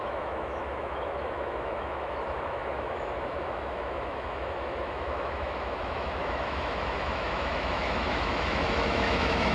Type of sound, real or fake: fake